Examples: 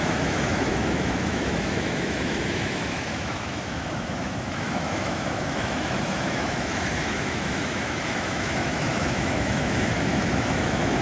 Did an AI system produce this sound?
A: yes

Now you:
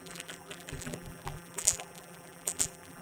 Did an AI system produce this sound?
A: yes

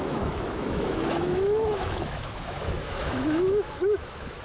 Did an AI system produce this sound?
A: yes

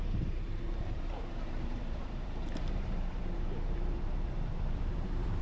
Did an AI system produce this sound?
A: yes